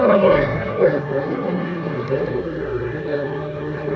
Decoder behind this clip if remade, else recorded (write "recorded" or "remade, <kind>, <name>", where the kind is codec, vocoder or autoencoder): remade, codec, SNAC